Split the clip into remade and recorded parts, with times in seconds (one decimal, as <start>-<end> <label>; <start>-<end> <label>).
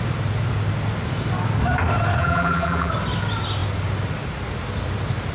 0.0-2.2 recorded; 2.2-2.9 remade; 2.9-5.3 recorded